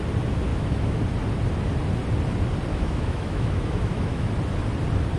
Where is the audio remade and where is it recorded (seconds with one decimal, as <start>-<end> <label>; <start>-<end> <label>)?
0.0-0.5 recorded; 0.5-1.0 remade; 1.0-2.7 recorded; 2.7-4.3 remade; 4.3-5.2 recorded